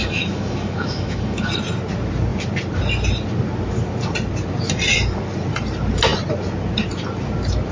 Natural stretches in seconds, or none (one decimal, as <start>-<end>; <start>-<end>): 1.5-7.7